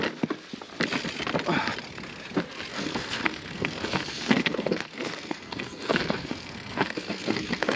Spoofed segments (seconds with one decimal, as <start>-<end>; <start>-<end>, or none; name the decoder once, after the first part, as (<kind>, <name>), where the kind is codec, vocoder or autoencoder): 2.7-7.8 (codec, SNAC)